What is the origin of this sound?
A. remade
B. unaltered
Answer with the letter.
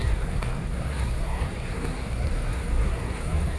A